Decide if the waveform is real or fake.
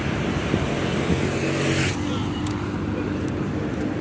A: real